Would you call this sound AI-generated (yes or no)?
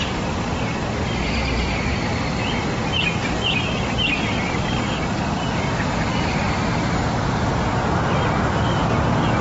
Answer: no